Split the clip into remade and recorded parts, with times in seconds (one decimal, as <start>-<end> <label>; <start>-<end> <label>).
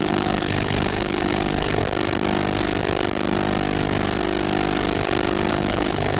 0.0-1.8 remade; 1.8-5.5 recorded; 5.5-6.2 remade